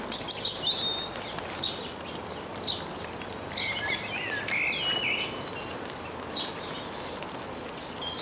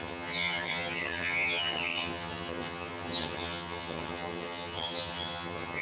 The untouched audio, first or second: first